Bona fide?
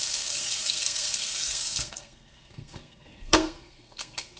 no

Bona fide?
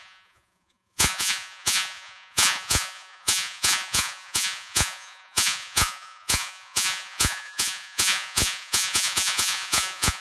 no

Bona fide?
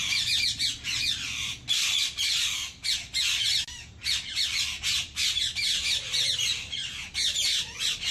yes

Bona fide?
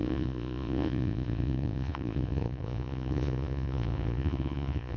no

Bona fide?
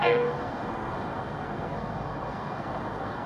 no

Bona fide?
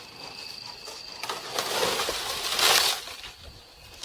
yes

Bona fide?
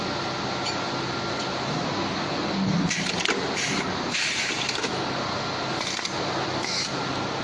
yes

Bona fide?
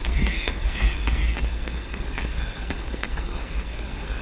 no